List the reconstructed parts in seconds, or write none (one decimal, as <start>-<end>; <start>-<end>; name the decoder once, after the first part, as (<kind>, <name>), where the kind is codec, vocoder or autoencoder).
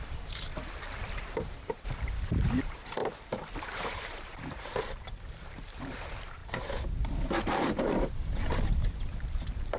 0.0-3.0 (vocoder, BigVGAN v2); 3.6-6.4; 7.4-9.8